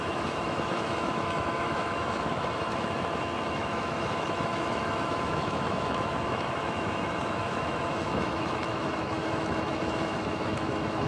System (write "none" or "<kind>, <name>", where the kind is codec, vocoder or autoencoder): autoencoder, DAC-VAE